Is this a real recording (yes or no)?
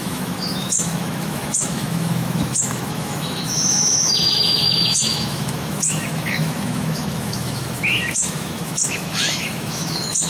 no